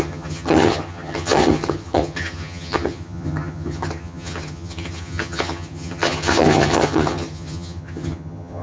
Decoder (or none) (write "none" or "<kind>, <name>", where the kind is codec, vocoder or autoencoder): vocoder, HiFi-GAN